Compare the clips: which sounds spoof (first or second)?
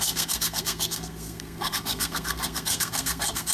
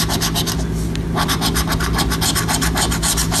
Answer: first